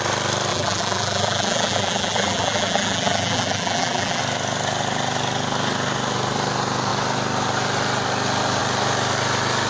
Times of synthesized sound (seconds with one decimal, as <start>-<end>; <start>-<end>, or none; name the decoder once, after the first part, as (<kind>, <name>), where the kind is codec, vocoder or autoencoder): 0.5-4.2 (vocoder, BigVGAN v2)

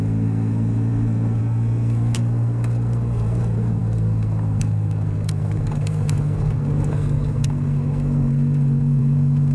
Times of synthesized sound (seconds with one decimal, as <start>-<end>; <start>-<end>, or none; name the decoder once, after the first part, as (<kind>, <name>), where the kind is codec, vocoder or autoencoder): 0.0-9.5 (codec, SNAC)

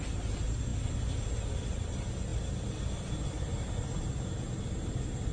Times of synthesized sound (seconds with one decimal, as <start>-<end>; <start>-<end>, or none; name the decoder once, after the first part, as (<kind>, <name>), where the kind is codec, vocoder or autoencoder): none

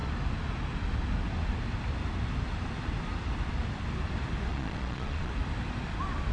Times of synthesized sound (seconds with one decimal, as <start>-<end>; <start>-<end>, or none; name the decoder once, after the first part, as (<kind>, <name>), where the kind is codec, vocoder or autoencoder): 4.5-5.3 (vocoder, Vocos)

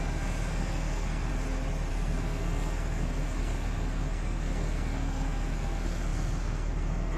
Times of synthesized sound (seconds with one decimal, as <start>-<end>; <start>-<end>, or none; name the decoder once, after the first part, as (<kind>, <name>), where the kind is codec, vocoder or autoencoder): 0.0-1.3 (codec, SNAC); 1.9-7.2

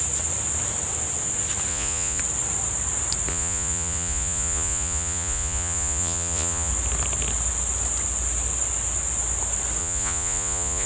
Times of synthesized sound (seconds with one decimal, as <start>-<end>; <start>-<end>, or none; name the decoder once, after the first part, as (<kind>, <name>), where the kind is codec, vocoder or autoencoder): 1.7-2.2 (vocoder, Vocos); 3.3-6.7; 9.8-10.9

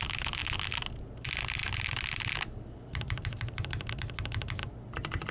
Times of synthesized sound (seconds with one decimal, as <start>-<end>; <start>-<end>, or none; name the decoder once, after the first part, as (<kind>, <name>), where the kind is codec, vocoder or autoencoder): 1.6-3.9 (vocoder, BigVGAN v2)